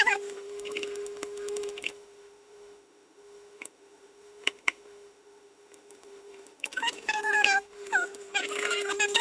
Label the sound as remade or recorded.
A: remade